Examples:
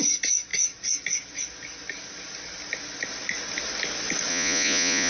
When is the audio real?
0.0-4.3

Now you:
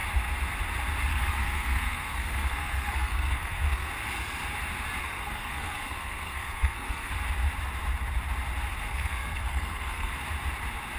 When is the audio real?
0.0-1.1; 3.9-5.0; 7.1-8.9; 10.1-11.0

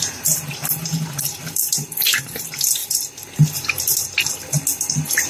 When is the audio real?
0.0-5.3

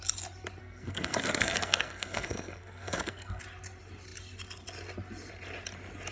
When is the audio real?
0.0-0.6; 3.4-6.1